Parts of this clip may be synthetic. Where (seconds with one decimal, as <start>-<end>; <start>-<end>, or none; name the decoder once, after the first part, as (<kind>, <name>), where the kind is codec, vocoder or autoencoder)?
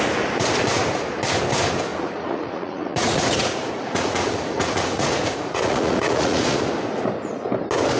1.9-6.7 (vocoder, Vocos)